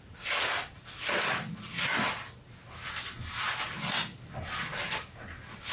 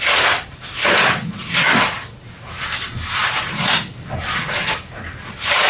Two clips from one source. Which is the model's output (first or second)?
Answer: second